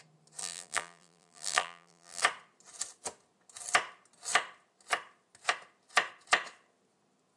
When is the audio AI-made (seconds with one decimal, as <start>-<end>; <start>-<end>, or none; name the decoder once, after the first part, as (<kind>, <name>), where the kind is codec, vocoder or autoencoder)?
0.4-2.2 (vocoder, BigVGAN v2)